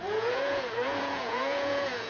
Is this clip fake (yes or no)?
yes